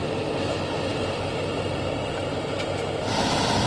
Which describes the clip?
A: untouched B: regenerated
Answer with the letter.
A